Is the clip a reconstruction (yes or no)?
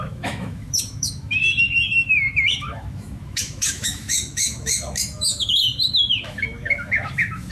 yes